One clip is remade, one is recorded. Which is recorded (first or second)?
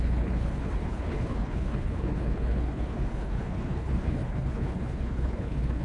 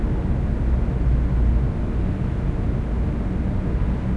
second